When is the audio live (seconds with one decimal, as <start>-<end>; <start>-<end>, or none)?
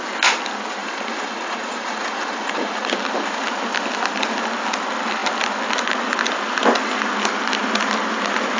0.0-0.8; 2.9-8.6